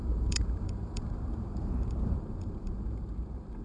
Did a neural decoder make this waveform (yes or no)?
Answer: yes